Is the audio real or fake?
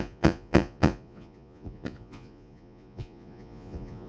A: fake